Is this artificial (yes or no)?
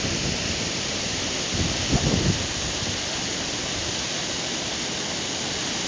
no